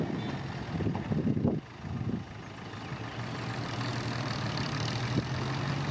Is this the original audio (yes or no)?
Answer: yes